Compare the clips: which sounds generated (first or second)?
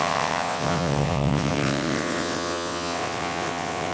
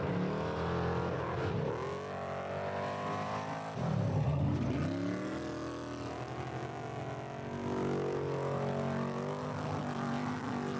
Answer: first